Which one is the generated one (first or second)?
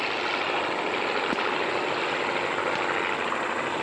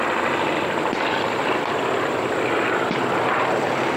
second